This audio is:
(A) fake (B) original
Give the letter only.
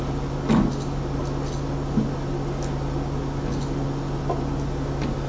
B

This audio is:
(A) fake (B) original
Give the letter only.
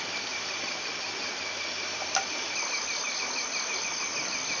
B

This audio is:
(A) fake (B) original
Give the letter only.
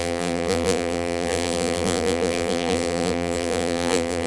A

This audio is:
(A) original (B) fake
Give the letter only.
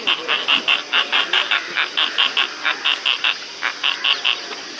A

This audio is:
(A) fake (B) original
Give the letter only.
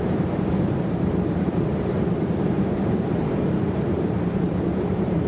A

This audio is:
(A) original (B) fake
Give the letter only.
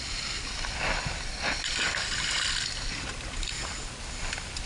A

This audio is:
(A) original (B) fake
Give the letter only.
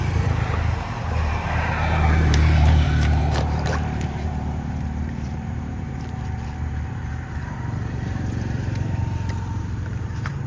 B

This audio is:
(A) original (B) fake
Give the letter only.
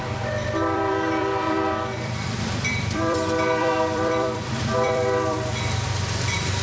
B